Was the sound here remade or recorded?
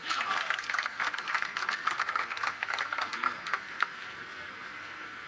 remade